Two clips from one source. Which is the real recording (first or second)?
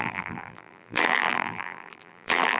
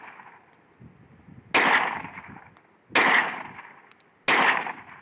second